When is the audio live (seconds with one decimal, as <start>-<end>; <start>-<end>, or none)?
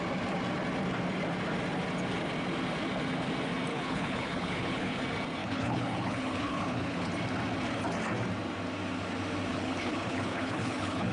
0.0-3.7; 5.0-5.4; 7.1-9.5